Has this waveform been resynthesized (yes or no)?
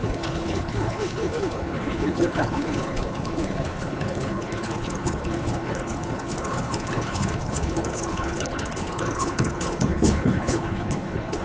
yes